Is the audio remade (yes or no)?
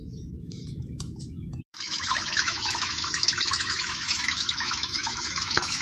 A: yes